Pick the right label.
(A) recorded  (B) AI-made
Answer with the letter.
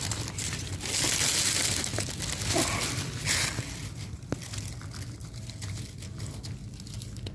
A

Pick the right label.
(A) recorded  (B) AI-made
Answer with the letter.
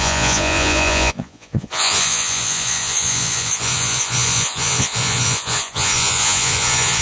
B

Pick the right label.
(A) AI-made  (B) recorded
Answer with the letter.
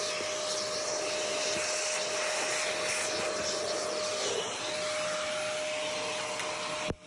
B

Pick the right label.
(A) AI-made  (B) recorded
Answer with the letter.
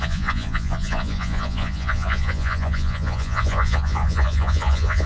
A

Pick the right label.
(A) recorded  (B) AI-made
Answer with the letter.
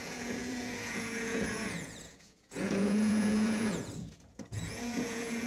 B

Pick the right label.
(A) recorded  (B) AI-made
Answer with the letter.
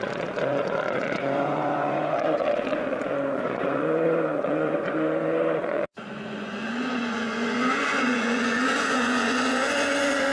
B